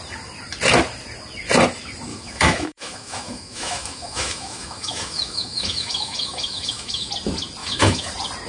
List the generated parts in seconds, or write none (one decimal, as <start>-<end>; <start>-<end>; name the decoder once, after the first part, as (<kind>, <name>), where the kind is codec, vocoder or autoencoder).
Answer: 2.1-7.1 (autoencoder, DAC-VAE); 7.6-8.1